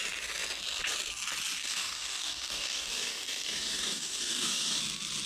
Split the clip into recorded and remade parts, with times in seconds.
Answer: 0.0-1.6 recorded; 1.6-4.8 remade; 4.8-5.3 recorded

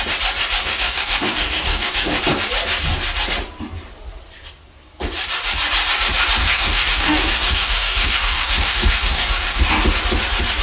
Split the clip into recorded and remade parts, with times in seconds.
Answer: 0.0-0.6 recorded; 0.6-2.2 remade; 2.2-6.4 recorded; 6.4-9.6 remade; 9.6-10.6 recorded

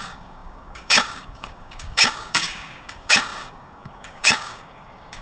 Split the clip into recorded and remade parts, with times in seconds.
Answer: 0.0-5.2 remade

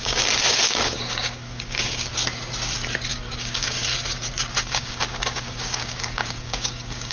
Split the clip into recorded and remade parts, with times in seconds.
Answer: 0.0-2.1 remade; 2.1-3.1 recorded; 3.1-3.9 remade; 3.9-4.6 recorded; 4.6-7.1 remade

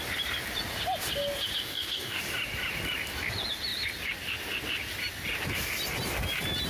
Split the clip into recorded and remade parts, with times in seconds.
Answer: 0.0-1.6 recorded; 1.6-2.2 remade; 2.2-6.7 recorded

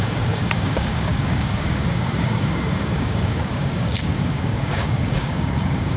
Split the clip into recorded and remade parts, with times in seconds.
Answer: 0.0-6.0 remade

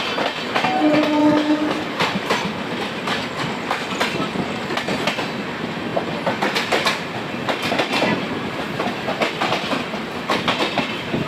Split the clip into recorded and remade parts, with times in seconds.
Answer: 0.0-1.2 recorded; 1.2-2.0 remade; 2.0-11.3 recorded

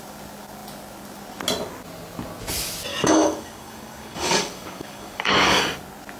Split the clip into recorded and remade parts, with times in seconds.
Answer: 0.0-2.9 recorded; 2.9-5.6 remade; 5.6-6.2 recorded